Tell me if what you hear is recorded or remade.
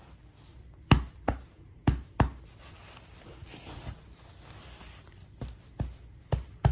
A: recorded